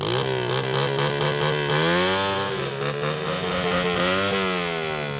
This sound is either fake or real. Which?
real